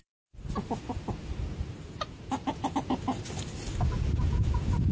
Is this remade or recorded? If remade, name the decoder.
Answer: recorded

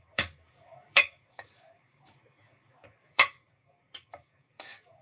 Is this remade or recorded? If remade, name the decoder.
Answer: remade, codec, DAC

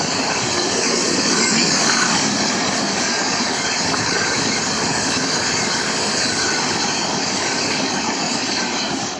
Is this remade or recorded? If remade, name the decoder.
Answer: remade, codec, DAC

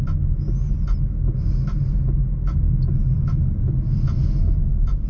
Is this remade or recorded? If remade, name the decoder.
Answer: recorded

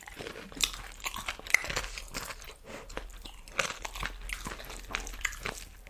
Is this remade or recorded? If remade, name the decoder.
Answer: recorded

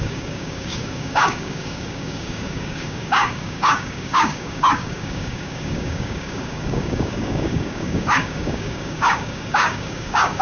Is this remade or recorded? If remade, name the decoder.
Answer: remade, codec, DAC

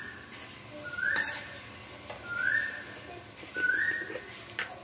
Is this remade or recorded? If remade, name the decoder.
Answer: recorded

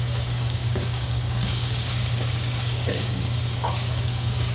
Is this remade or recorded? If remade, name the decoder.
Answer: remade, codec, DAC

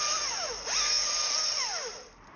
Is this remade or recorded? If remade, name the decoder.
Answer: recorded